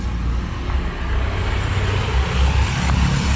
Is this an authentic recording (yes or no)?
yes